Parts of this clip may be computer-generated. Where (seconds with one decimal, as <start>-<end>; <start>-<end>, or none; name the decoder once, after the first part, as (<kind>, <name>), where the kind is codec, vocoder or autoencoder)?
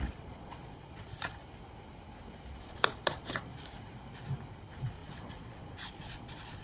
0.0-1.4 (vocoder, Vocos); 2.6-3.5; 4.6-6.6